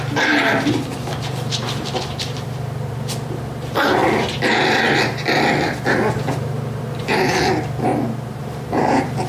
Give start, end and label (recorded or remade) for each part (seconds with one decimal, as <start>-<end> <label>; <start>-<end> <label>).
0.0-7.9 remade; 7.9-8.4 recorded; 8.4-9.3 remade